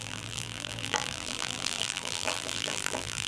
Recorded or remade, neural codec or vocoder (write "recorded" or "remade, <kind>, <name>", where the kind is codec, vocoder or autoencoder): remade, vocoder, BigVGAN v2